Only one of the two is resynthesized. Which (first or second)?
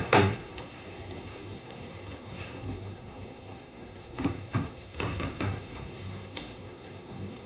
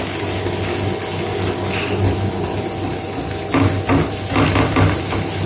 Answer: first